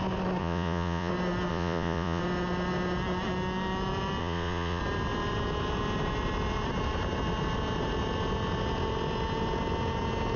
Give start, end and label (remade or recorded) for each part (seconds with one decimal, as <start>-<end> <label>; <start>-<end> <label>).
0.0-0.4 recorded; 0.4-1.1 remade; 1.1-1.5 recorded; 1.5-2.2 remade; 2.2-4.2 recorded; 4.2-4.8 remade; 4.8-10.4 recorded